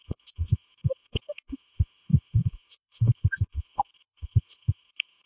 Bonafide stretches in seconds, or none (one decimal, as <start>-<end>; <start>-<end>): none